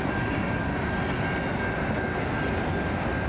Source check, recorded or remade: recorded